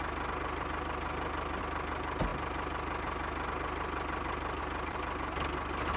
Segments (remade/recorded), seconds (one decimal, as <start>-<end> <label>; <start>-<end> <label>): 0.0-6.0 recorded

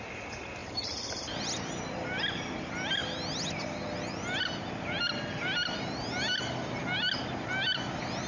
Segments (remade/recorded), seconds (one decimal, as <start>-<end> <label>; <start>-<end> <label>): 0.0-0.6 recorded; 0.6-1.4 remade; 1.4-8.3 recorded